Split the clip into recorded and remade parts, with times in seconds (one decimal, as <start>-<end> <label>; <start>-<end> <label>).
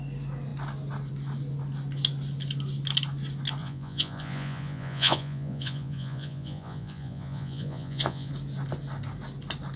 0.0-3.6 recorded; 3.6-8.3 remade; 8.3-9.8 recorded